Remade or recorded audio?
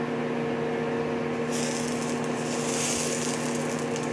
recorded